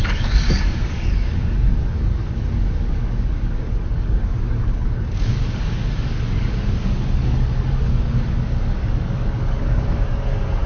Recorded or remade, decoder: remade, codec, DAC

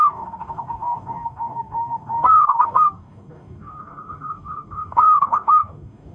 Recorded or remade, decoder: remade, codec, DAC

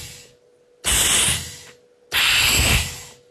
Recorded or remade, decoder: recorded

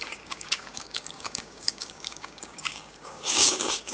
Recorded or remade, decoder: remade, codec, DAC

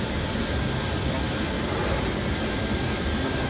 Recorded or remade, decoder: recorded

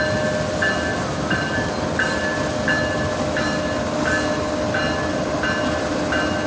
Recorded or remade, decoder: recorded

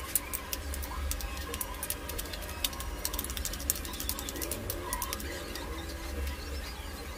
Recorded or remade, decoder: recorded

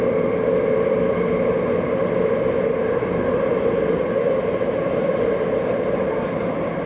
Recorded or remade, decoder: recorded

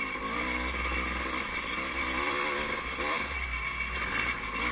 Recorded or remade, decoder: recorded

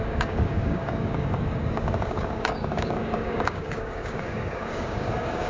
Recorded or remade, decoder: remade, codec, DAC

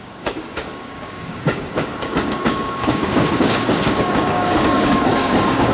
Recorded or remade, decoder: remade, codec, DAC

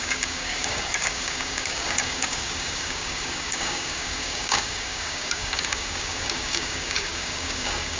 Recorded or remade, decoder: remade, codec, DAC